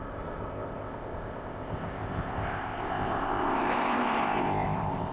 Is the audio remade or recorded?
remade